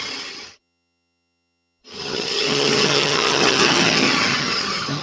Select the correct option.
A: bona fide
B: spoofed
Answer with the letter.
B